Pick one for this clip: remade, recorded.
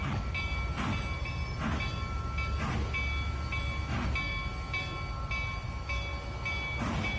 recorded